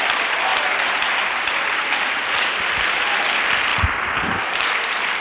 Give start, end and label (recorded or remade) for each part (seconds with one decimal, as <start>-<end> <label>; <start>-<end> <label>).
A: 0.0-5.2 recorded